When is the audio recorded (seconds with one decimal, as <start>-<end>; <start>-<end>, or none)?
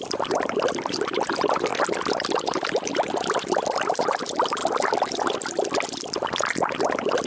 1.7-2.4; 2.9-3.9; 4.6-7.3